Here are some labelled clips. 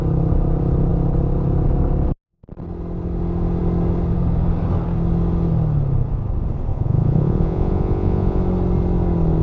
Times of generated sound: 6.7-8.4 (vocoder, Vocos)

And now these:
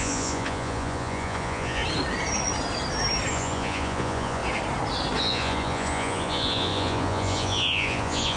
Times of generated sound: 0.0-1.8 (vocoder, Vocos); 3.3-4.4; 5.2-8.4

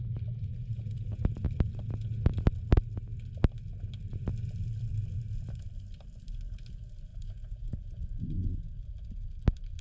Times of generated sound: 0.5-1.2 (vocoder, Vocos); 7.1-8.1

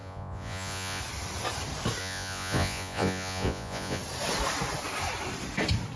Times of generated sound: 0.0-1.0 (vocoder, Vocos); 2.0-4.0

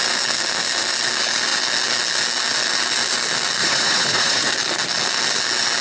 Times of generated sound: 3.6-4.5 (vocoder, Vocos)